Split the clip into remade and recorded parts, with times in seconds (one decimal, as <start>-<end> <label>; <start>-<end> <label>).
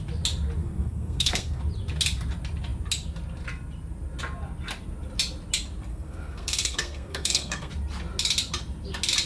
0.0-0.6 recorded; 0.6-1.6 remade; 1.6-5.9 recorded; 5.9-7.7 remade; 7.7-9.3 recorded